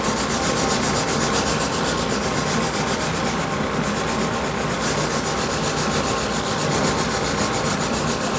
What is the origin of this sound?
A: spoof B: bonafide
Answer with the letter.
B